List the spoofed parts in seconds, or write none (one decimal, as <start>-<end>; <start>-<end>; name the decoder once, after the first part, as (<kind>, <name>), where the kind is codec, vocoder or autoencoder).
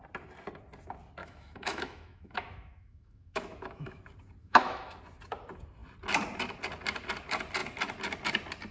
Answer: 1.2-4.0 (autoencoder, DAC-VAE); 4.4-5.0